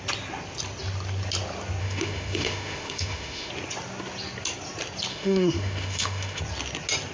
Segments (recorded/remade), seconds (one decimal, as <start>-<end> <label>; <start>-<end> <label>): 0.0-1.8 recorded; 1.8-3.5 remade; 3.5-5.1 recorded; 5.1-6.4 remade; 6.4-7.1 recorded